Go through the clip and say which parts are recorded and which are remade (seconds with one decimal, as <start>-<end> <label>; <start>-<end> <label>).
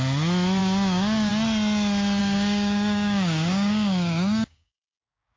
0.0-0.6 recorded; 0.6-1.3 remade; 1.3-2.2 recorded; 2.2-5.4 remade